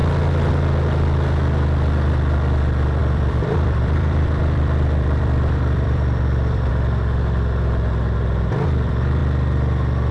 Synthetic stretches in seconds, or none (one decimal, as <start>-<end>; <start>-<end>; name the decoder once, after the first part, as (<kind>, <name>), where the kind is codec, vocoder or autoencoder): 3.0-6.7 (vocoder, BigVGAN v2)